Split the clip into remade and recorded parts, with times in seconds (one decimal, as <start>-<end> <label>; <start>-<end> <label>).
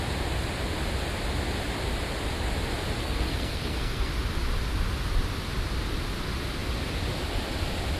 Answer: 0.0-3.0 recorded; 3.0-4.1 remade; 4.1-8.0 recorded